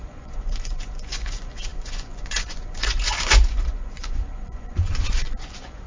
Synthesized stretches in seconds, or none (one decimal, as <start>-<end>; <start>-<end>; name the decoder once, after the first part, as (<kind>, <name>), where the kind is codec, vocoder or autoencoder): 0.0-5.9 (vocoder, Vocos)